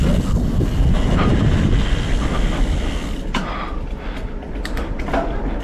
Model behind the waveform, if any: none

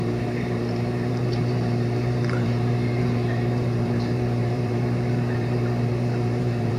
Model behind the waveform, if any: vocoder, BigVGAN v2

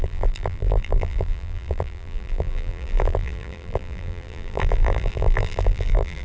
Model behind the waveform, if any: vocoder, BigVGAN v2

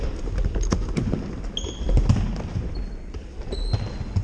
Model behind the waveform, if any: none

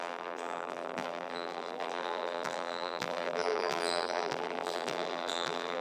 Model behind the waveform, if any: vocoder, BigVGAN v2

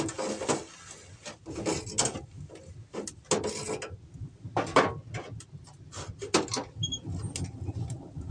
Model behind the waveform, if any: none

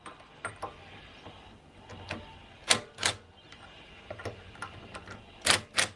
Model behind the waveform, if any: none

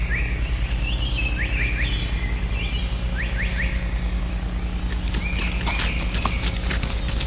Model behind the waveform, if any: none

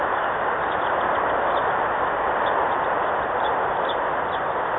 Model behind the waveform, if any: none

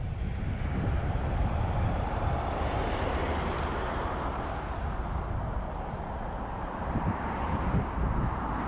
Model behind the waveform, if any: vocoder, BigVGAN v2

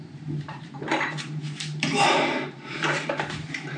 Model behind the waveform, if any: vocoder, BigVGAN v2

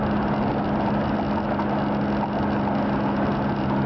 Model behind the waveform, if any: none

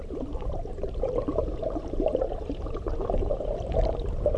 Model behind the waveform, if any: vocoder, BigVGAN v2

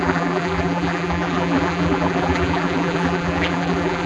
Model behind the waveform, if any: vocoder, BigVGAN v2